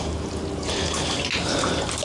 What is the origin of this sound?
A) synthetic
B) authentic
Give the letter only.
B